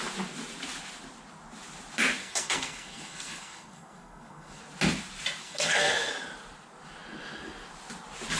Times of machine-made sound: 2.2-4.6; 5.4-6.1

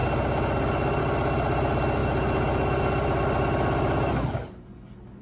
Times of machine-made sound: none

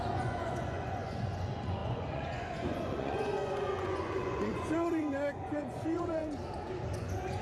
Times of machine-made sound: 0.0-6.4; 7.0-7.4